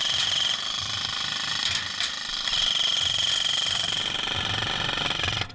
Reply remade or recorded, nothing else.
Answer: recorded